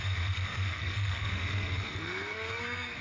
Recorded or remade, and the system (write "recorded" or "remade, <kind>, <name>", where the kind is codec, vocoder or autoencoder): remade, codec, SNAC